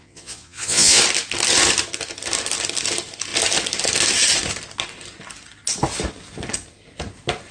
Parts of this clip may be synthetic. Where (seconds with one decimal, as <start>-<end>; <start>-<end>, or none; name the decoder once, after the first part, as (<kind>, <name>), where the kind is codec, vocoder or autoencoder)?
0.0-1.0 (vocoder, Vocos)